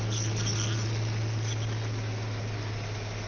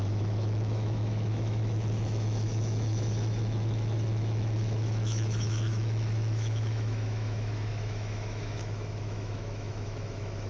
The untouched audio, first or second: first